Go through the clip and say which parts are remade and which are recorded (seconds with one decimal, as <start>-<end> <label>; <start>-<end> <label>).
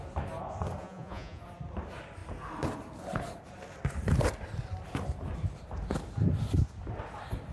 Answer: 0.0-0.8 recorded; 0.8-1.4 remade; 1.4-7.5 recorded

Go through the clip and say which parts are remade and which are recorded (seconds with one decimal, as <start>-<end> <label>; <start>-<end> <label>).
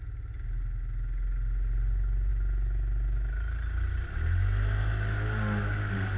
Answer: 0.0-6.2 recorded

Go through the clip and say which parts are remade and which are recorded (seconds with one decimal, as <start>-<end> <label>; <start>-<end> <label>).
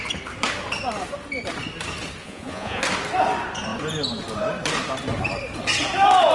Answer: 0.0-2.2 recorded; 2.2-2.8 remade; 2.8-6.3 recorded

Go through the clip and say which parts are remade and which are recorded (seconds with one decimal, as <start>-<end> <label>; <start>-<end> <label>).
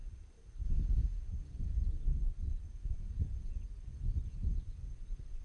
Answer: 0.0-1.4 recorded; 1.4-5.4 remade